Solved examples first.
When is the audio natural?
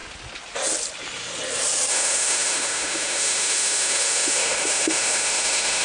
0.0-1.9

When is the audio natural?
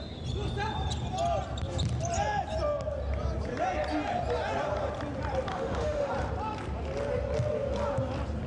0.0-5.5; 6.1-8.5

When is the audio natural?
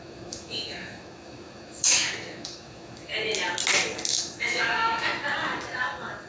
3.1-4.1; 5.1-6.3